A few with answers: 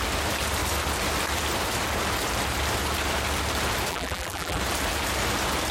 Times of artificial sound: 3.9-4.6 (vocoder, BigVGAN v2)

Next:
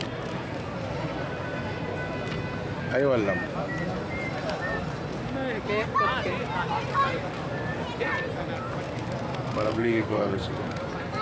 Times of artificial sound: 9.7-10.5 (codec, SNAC)

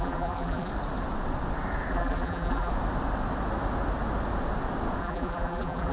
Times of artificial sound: 0.0-0.7 (vocoder, BigVGAN v2); 1.9-2.7; 5.0-5.9

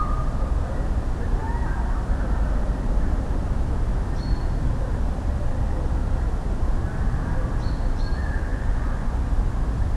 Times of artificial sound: 8.5-9.3 (vocoder, Vocos)

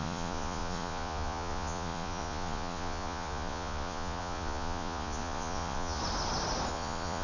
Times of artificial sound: 0.0-6.0 (vocoder, Vocos); 6.7-7.2

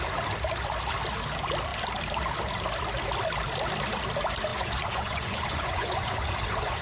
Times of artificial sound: 4.5-6.8 (vocoder, Vocos)

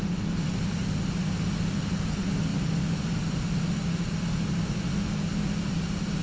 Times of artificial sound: none

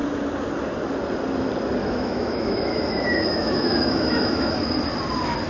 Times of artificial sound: 1.8-4.5 (autoencoder, DAC-VAE)